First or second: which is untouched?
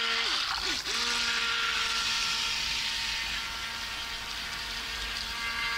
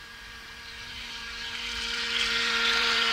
first